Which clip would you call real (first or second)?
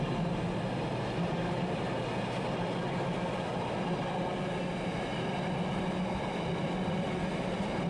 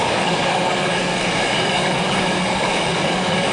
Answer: first